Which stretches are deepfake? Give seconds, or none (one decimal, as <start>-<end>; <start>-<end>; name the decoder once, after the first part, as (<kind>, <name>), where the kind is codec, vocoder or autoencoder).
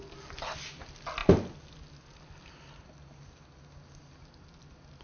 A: none